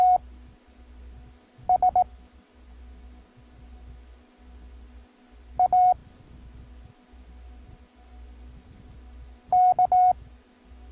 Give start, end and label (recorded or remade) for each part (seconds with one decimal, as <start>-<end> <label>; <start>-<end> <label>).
0.0-10.9 recorded